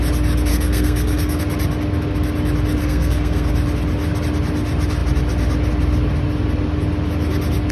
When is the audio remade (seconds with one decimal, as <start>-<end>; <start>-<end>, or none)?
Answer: 0.5-1.4; 2.8-3.5